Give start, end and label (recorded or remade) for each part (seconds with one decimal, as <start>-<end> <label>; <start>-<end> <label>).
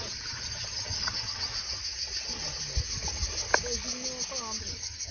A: 0.0-1.5 remade; 1.5-4.6 recorded; 4.6-5.1 remade